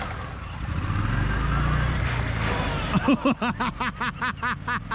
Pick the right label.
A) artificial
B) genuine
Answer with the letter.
B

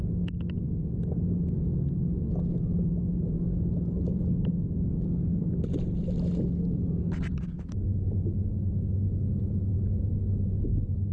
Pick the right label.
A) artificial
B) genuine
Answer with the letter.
B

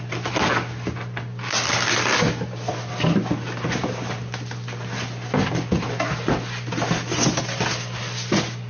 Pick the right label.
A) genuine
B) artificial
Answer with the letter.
A